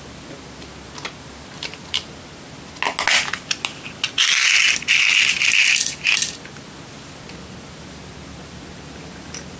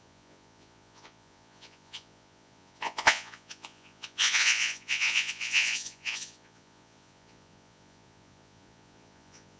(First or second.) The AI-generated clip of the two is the second